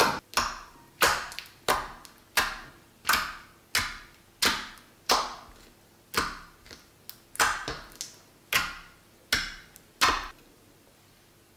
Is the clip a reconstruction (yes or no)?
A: no